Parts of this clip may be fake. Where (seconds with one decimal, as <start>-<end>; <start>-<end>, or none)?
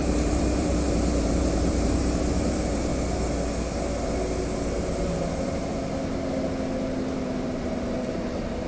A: 0.0-2.9; 5.0-5.7; 7.1-8.7